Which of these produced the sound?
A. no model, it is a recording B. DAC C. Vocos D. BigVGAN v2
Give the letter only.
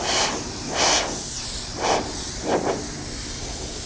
A